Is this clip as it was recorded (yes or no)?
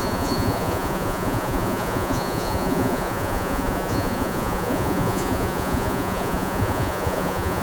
no